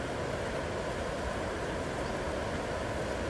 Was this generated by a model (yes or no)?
no